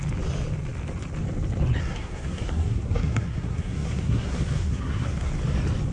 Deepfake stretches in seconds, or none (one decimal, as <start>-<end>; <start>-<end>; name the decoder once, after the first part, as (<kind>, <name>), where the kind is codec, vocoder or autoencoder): 1.8-5.3 (codec, SNAC)